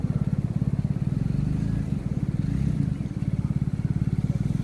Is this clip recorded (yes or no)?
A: yes